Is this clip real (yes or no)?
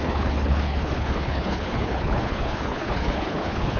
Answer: no